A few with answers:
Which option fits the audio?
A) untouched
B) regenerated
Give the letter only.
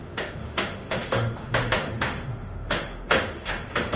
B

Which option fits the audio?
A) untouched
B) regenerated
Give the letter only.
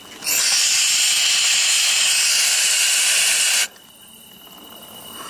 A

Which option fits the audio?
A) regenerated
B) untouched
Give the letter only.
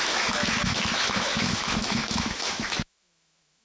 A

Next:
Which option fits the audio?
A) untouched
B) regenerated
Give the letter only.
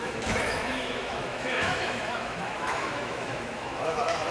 B